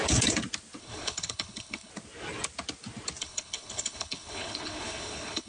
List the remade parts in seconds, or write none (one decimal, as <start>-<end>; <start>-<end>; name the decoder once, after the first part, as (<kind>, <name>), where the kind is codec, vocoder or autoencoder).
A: 0.8-1.9 (codec, HILCodec); 3.2-5.5